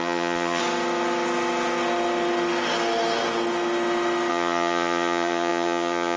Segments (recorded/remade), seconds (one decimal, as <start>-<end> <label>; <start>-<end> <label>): 0.0-0.6 remade; 0.6-4.3 recorded; 4.3-6.2 remade